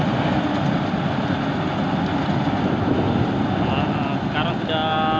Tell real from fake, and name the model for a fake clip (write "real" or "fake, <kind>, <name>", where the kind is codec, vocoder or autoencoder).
real